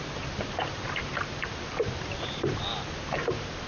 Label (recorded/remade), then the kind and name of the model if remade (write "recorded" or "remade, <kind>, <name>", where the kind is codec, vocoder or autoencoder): remade, vocoder, BigVGAN v2